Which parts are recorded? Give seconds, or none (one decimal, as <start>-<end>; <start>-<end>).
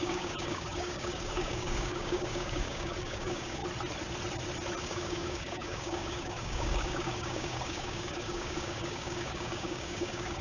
3.6-4.8